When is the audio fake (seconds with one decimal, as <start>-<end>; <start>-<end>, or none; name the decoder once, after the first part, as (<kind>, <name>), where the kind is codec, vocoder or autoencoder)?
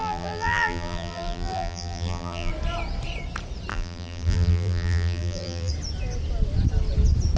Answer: 0.0-2.5 (vocoder, BigVGAN v2); 3.7-5.7